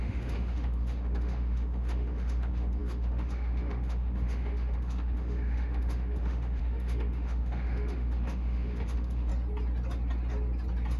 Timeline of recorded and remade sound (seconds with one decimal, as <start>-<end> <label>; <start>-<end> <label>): 0.0-9.3 remade; 9.3-11.0 recorded